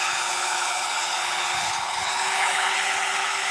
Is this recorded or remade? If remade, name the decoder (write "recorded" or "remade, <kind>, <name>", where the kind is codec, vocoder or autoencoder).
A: remade, codec, HILCodec